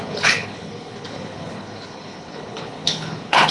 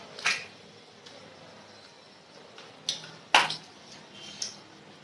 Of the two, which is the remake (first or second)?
first